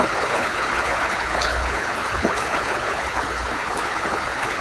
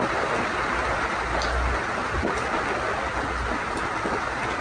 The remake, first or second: first